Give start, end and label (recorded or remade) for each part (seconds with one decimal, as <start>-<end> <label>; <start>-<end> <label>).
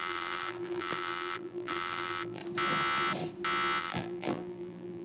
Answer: 0.0-2.4 remade; 2.4-3.8 recorded; 3.8-5.0 remade